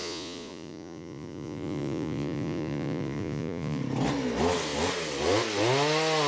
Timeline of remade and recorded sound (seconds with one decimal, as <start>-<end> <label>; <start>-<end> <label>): 0.0-3.8 remade; 3.8-6.3 recorded